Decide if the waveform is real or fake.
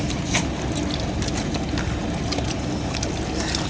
real